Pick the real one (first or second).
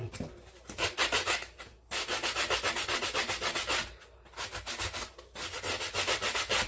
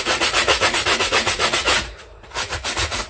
first